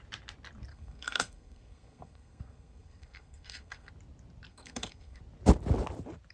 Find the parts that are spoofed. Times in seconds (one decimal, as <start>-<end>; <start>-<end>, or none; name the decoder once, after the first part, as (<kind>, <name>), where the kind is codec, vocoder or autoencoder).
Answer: 0.7-3.9 (codec, SNAC); 4.5-5.2